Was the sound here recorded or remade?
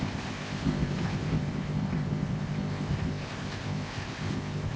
remade